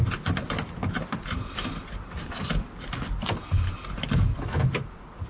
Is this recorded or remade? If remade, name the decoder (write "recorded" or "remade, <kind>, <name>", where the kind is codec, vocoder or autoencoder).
recorded